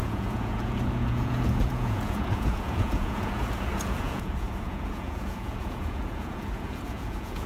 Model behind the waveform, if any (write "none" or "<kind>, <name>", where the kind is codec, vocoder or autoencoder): vocoder, Vocos